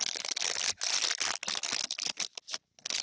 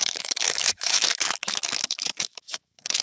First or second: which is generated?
second